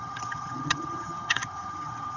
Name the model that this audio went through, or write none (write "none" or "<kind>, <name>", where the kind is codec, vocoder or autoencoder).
vocoder, HiFi-GAN